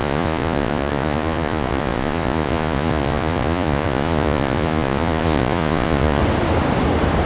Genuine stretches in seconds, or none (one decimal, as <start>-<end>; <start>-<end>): 6.2-7.3